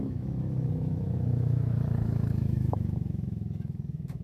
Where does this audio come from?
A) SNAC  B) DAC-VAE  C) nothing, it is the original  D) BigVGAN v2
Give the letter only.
B